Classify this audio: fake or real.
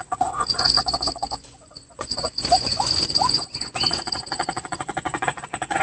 fake